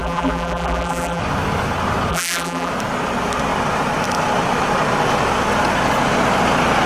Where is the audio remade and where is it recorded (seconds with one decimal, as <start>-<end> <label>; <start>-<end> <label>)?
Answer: 0.0-1.2 remade; 1.2-2.1 recorded; 2.1-2.7 remade; 2.7-6.9 recorded

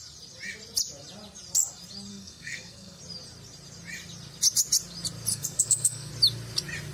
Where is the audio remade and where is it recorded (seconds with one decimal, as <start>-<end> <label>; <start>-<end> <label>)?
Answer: 0.0-2.1 recorded; 2.1-3.0 remade; 3.0-5.3 recorded; 5.3-6.1 remade; 6.1-6.9 recorded

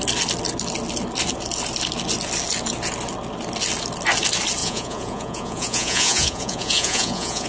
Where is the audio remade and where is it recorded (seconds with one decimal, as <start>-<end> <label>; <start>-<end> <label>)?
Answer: 0.0-4.6 recorded; 4.6-7.5 remade

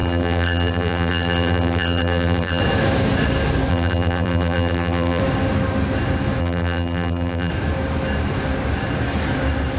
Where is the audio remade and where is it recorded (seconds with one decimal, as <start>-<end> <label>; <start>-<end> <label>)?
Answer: 0.0-2.6 remade; 2.6-3.7 recorded; 3.7-5.2 remade; 5.2-6.4 recorded; 6.4-7.5 remade; 7.5-9.8 recorded

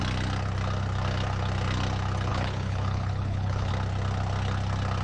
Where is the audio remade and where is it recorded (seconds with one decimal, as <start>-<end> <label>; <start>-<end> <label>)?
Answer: 0.0-2.3 recorded; 2.3-3.7 remade; 3.7-5.0 recorded

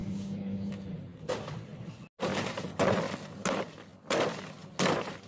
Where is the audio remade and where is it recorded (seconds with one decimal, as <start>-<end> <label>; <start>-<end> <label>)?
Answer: 0.0-0.7 remade; 0.7-5.3 recorded

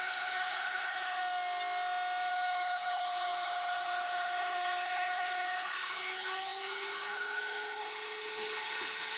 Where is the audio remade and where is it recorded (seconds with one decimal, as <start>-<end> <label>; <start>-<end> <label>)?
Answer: 0.0-1.2 remade; 1.2-2.3 recorded; 2.3-9.2 remade

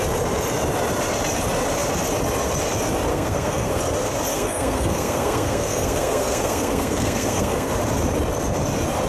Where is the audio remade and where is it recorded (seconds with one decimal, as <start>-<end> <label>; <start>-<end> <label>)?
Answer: 0.0-3.1 recorded; 3.1-3.8 remade; 3.8-4.3 recorded; 4.3-7.7 remade; 7.7-9.1 recorded